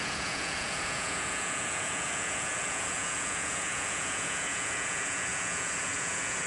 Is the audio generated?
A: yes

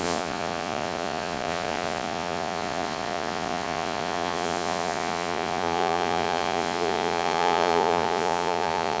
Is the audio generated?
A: yes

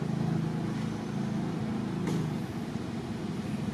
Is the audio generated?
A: no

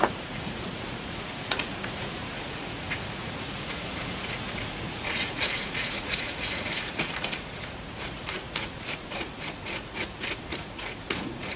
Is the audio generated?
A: yes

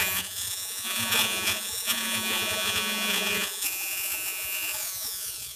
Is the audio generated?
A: yes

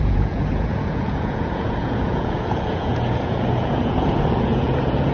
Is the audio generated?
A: yes